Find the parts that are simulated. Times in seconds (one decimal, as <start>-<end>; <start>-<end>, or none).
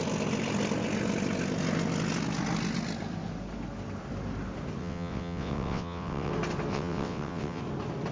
4.8-6.3; 6.7-7.6